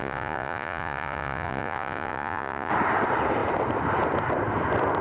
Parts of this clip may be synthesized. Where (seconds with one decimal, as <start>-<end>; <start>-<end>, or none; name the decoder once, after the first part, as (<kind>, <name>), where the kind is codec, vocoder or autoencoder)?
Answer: 0.0-2.7 (vocoder, Vocos)